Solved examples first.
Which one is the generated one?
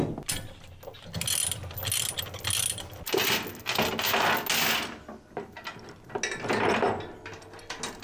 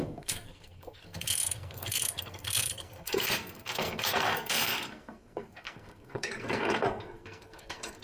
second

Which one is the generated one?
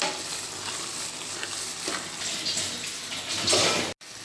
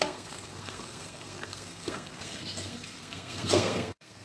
second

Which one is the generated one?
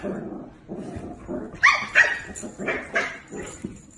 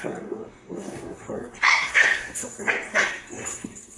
second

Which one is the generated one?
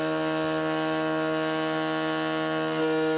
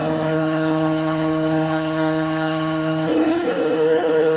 second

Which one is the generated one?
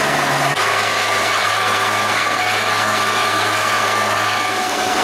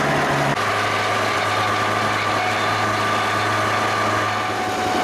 first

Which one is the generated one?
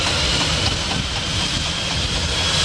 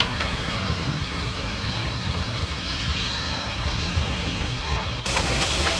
second